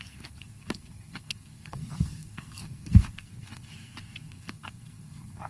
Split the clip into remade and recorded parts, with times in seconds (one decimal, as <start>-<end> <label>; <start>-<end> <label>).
0.0-5.5 remade